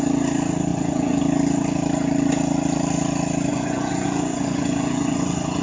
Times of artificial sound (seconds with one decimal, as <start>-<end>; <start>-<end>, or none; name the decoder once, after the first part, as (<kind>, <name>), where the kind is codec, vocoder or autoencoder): 0.7-1.2 (vocoder, Vocos); 3.5-5.6